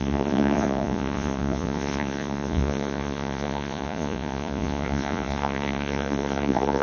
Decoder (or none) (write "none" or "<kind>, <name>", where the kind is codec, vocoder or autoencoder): vocoder, Vocos